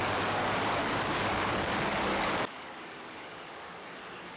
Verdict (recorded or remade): remade